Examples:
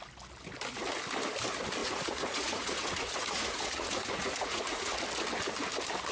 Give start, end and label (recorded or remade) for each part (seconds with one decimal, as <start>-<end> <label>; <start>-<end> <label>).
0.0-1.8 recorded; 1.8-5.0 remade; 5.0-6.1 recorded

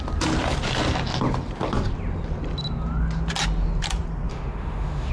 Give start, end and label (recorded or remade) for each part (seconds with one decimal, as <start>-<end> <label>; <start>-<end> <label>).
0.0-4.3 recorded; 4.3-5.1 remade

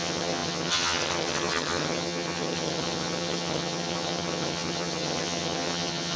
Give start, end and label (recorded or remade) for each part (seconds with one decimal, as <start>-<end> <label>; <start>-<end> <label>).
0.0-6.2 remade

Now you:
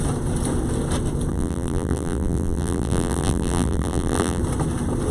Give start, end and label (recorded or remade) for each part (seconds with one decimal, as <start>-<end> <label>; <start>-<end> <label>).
0.0-1.3 recorded; 1.3-4.4 remade; 4.4-5.1 recorded